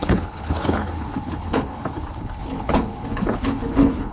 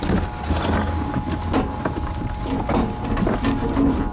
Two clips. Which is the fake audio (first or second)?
first